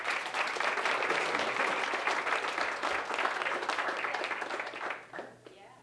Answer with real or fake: real